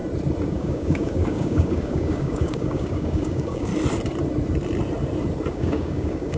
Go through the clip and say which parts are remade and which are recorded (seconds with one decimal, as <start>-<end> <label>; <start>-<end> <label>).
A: 0.0-0.5 recorded; 0.5-3.7 remade; 3.7-5.5 recorded; 5.5-6.4 remade